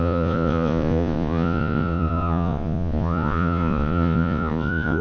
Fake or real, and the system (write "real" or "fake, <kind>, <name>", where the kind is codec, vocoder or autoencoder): fake, vocoder, Vocos